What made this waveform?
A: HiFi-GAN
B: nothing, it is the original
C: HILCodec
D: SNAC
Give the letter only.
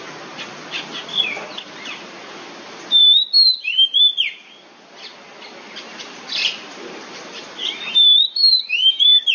B